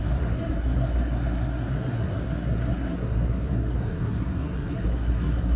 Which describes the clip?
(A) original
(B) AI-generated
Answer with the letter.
B